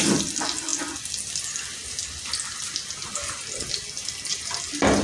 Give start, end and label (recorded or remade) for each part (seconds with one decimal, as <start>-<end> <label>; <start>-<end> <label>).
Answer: 0.0-5.0 recorded